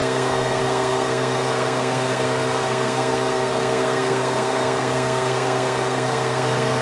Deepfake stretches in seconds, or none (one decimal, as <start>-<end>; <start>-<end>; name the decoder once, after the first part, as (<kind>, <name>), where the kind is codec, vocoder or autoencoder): 0.0-6.8 (codec, SNAC)